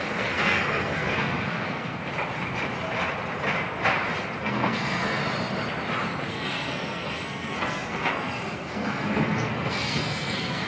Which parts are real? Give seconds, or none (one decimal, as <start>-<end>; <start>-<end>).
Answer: 2.0-4.4; 5.2-6.3